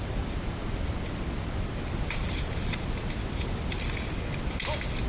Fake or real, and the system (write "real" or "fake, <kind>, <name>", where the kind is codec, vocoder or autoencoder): real